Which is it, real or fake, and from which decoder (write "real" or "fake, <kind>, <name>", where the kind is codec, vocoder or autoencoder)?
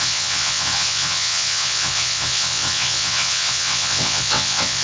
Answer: fake, vocoder, WaveNeXt